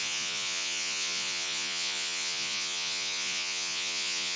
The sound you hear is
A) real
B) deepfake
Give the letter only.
B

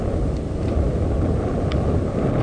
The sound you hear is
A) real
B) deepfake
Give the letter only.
A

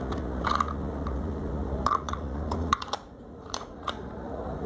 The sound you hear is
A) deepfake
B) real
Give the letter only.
A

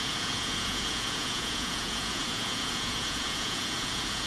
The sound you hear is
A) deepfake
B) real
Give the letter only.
A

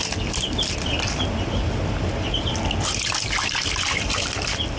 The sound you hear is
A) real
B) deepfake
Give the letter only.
A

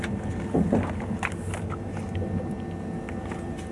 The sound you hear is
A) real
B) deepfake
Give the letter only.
A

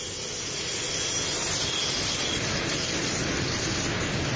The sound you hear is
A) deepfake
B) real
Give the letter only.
B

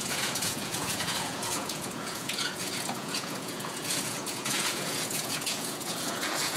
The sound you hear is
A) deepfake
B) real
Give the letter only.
A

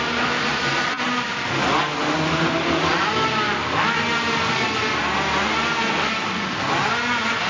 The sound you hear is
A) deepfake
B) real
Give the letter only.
B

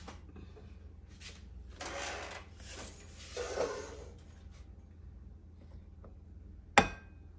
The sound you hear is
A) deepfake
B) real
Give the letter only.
B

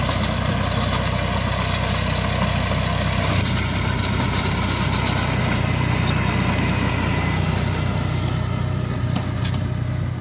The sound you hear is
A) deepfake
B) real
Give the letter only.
B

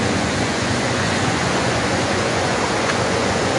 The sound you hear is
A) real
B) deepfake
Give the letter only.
B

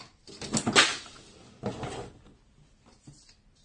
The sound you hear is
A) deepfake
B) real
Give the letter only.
B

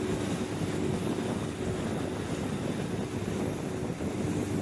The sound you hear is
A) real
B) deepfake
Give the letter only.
A